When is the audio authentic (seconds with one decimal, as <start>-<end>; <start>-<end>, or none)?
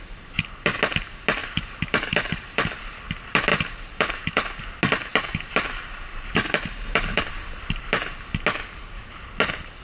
0.0-1.4; 3.0-3.5; 4.6-6.1; 7.2-9.8